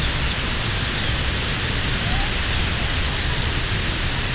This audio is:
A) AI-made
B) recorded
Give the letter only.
B